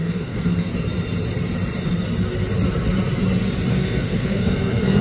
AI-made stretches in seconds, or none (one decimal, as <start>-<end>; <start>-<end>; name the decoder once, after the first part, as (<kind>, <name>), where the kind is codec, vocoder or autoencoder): 0.0-0.7 (codec, SNAC); 3.7-5.0